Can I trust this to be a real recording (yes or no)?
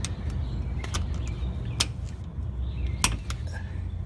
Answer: yes